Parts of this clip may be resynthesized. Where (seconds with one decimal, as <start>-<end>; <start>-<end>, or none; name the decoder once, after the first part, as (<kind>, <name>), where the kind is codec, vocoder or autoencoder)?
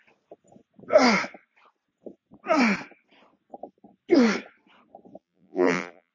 5.2-6.1 (vocoder, BigVGAN v2)